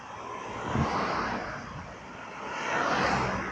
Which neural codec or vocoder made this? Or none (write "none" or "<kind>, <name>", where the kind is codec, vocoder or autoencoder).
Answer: none